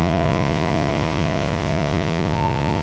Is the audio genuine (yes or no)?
no